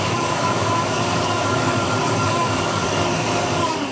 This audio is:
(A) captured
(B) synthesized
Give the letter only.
B